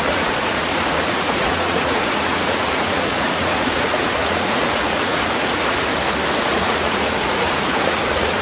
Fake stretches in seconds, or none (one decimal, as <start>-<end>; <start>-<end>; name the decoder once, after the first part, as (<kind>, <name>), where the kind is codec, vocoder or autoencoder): 0.0-5.9 (vocoder, Vocos); 6.4-8.4